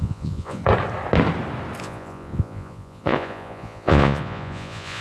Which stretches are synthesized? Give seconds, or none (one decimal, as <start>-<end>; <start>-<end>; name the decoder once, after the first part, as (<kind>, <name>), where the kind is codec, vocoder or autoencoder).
0.0-0.6 (vocoder, Vocos); 1.8-5.0